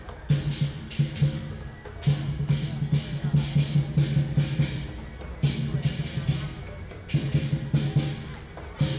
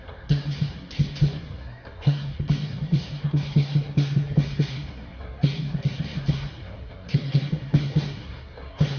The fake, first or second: second